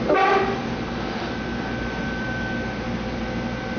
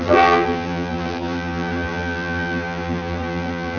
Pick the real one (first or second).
first